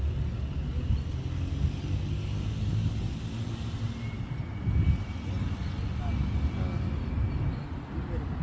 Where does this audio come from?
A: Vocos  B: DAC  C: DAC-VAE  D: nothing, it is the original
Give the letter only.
D